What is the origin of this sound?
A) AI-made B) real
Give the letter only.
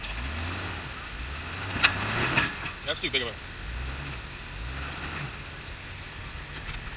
B